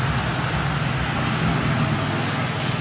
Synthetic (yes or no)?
no